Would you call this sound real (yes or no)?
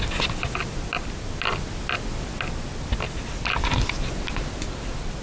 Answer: yes